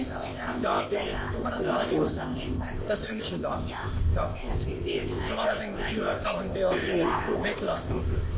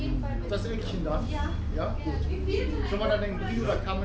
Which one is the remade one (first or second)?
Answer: first